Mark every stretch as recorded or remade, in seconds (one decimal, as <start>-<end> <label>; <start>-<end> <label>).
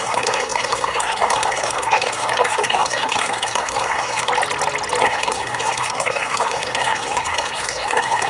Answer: 0.0-4.3 remade; 4.3-5.0 recorded; 5.0-8.3 remade